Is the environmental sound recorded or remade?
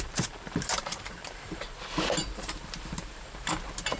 remade